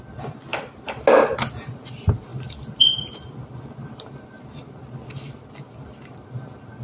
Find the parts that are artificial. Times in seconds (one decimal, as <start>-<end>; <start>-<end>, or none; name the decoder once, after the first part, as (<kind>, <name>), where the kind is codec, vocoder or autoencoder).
none